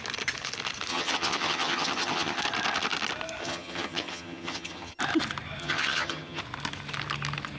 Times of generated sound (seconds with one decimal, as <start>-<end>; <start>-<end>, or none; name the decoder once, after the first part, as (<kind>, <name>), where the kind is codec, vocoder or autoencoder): 0.9-2.4 (vocoder, HiFi-GAN); 3.4-5.0; 5.6-6.4